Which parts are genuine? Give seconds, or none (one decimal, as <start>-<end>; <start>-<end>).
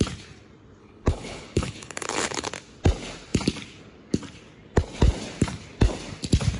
0.0-0.8; 2.5-6.6